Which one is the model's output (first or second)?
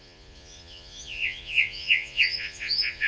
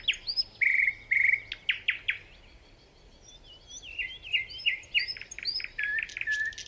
first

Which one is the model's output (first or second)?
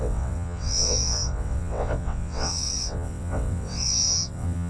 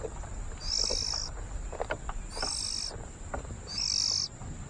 first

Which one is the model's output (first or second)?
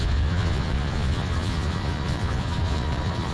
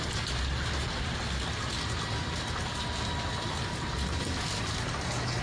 first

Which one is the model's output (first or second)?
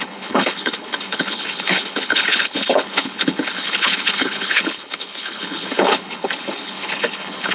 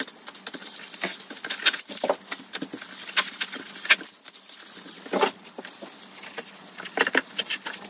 first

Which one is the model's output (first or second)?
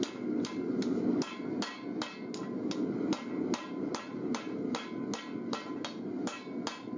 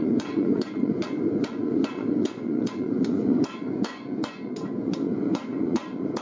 second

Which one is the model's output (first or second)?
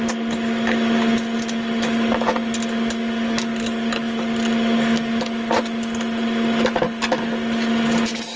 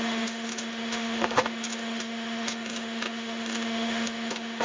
second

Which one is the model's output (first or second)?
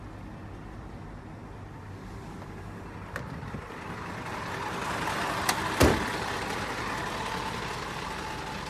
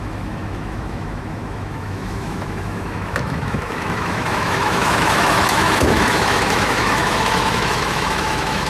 second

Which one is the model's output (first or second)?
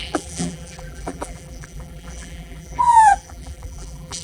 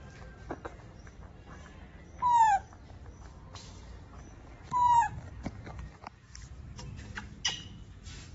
first